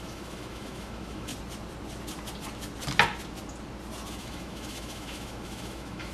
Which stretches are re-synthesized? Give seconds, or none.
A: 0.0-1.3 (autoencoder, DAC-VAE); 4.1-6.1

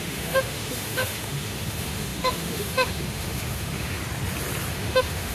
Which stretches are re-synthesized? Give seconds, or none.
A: 0.0-4.0 (autoencoder, DAC-VAE); 4.7-5.3

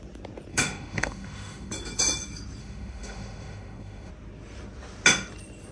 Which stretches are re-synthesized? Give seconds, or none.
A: 0.5-1.7 (autoencoder, DAC-VAE); 2.6-4.1